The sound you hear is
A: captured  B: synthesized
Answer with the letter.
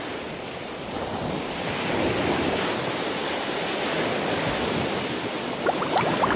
A